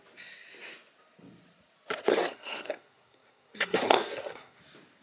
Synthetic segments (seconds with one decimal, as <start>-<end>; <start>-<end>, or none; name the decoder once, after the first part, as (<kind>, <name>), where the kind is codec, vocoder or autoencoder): 2.1-4.6 (codec, SNAC)